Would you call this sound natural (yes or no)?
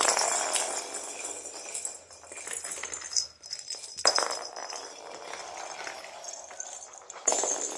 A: yes